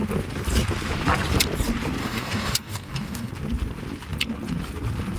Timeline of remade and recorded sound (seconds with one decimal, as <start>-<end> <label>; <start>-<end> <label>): 0.0-2.0 recorded; 2.0-3.3 remade; 3.3-5.2 recorded